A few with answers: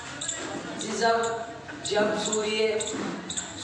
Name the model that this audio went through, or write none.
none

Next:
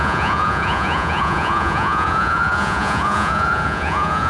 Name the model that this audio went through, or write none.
vocoder, Vocos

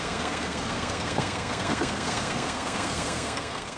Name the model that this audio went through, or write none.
codec, SNAC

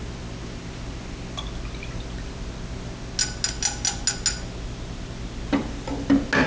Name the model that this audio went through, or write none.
none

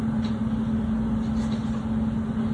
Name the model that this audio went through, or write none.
none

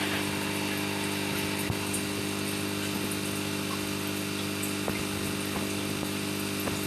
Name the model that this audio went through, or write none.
none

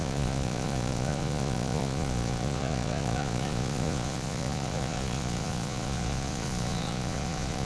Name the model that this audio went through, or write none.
vocoder, Vocos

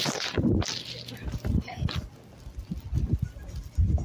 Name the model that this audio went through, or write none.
none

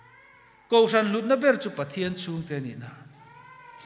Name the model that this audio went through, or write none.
none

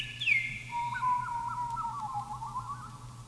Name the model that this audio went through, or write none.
vocoder, BigVGAN v2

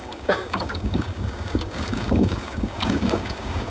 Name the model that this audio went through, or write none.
codec, DAC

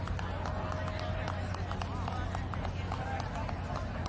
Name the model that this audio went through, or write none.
none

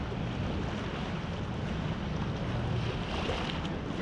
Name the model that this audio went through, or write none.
none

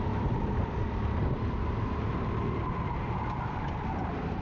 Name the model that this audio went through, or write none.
none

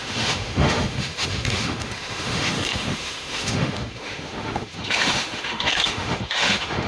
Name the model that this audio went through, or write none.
autoencoder, DAC-VAE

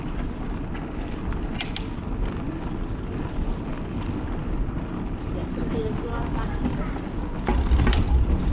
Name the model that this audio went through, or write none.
none